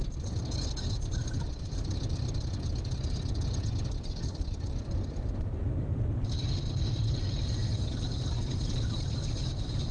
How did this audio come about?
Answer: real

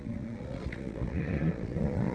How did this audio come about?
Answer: fake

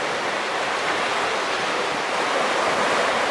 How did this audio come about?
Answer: real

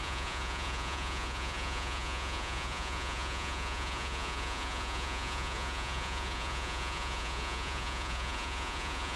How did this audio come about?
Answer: fake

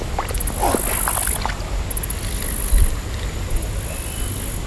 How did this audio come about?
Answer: real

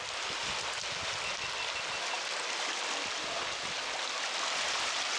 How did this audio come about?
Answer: real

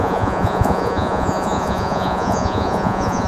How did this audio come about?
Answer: fake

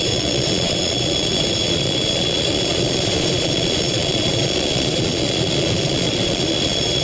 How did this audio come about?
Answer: fake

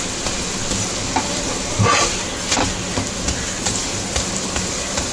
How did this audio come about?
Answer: real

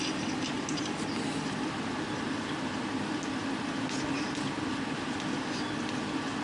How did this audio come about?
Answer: real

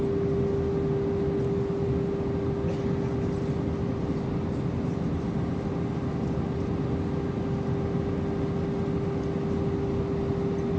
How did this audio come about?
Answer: real